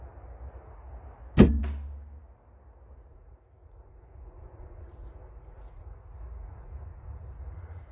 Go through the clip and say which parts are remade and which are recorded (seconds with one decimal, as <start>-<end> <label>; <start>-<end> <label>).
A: 0.0-3.1 recorded; 3.1-7.9 remade